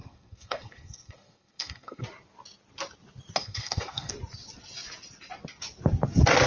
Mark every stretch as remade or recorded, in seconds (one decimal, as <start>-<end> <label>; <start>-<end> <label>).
0.0-2.0 remade; 2.0-3.4 recorded; 3.4-4.1 remade; 4.1-6.5 recorded